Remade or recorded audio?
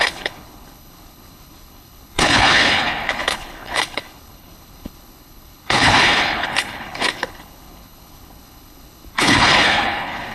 remade